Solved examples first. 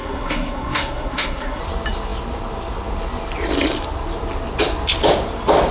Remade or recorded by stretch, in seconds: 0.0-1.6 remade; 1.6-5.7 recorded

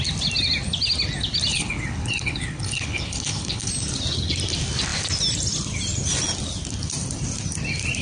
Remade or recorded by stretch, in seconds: 0.0-1.5 recorded; 1.5-3.7 remade; 3.7-8.0 recorded

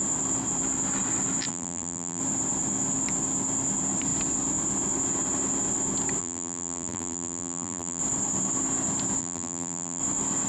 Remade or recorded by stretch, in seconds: 0.0-1.5 recorded; 1.5-2.2 remade; 2.2-6.2 recorded; 6.2-8.0 remade; 8.0-9.2 recorded; 9.2-10.0 remade; 10.0-10.5 recorded

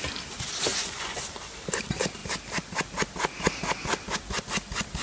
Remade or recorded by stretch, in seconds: 0.0-0.7 recorded; 0.7-1.5 remade; 1.5-5.0 recorded

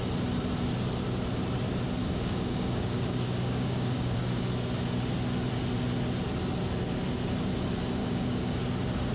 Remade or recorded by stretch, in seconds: 0.0-2.0 recorded; 2.0-4.4 remade; 4.4-8.0 recorded; 8.0-8.6 remade; 8.6-9.1 recorded

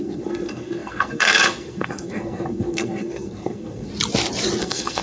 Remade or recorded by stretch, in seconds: 0.0-3.9 remade; 3.9-4.6 recorded; 4.6-5.0 remade